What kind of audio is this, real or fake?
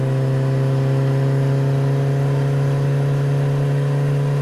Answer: real